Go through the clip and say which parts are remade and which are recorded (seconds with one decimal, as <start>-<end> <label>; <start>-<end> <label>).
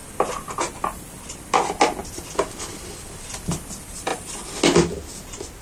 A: 0.0-0.5 remade; 0.5-2.0 recorded; 2.0-3.5 remade; 3.5-5.6 recorded